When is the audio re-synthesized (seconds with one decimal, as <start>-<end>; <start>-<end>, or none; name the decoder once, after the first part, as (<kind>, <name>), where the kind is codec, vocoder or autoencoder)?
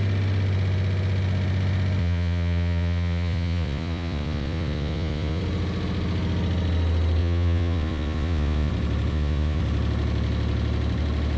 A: 2.0-5.4 (vocoder, Vocos); 7.2-8.7; 9.1-9.6